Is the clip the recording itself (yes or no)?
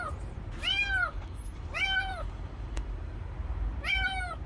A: no